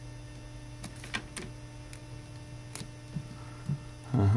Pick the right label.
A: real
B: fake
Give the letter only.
A